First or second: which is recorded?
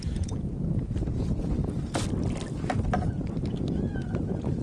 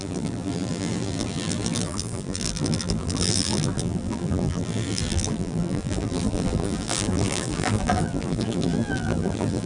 first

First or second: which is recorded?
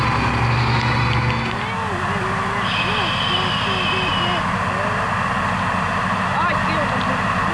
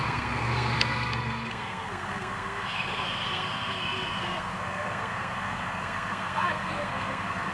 first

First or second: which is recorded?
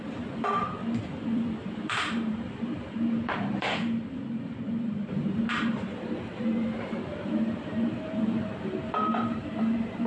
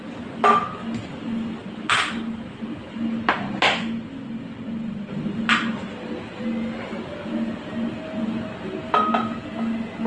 second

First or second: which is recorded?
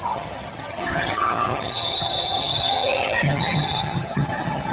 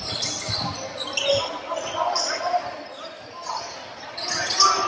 second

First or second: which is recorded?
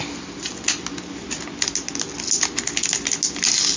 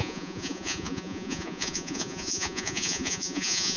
first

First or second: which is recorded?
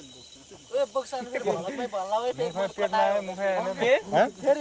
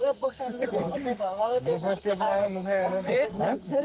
first